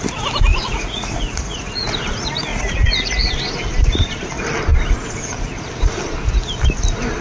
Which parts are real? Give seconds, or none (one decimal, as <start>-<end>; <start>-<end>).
0.0-0.5; 1.9-2.5; 3.3-7.2